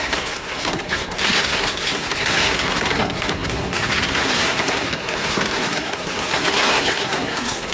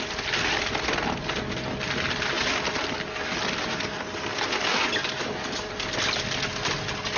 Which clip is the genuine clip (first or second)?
second